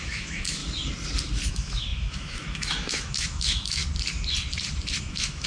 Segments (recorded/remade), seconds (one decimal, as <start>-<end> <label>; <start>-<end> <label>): 0.0-0.6 remade; 0.6-1.5 recorded; 1.5-3.8 remade; 3.8-5.0 recorded; 5.0-5.5 remade